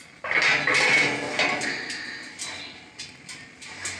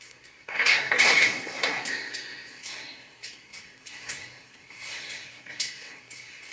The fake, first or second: second